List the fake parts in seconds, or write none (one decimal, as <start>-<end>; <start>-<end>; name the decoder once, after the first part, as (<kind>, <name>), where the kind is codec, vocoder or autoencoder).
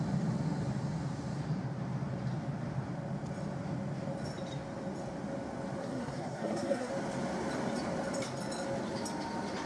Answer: 5.8-6.9 (codec, SNAC)